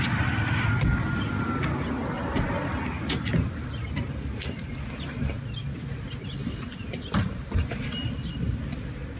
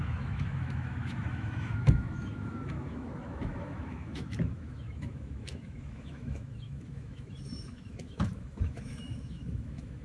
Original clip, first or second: first